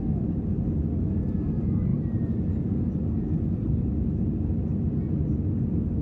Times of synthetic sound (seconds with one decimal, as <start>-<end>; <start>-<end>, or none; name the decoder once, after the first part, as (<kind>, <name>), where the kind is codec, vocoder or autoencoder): none